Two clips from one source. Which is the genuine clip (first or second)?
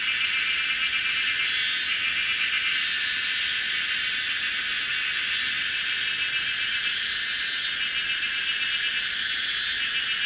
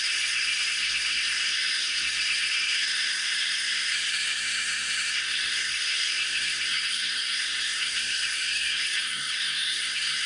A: first